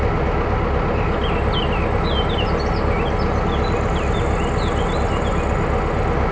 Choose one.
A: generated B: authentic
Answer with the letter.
B